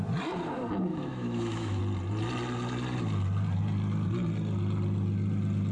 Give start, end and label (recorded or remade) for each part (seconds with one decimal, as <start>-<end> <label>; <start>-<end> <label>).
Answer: 0.0-0.9 recorded; 0.9-1.8 remade; 1.8-5.7 recorded